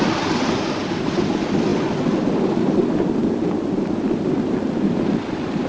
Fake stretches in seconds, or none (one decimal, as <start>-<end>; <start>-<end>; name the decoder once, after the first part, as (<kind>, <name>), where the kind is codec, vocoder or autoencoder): none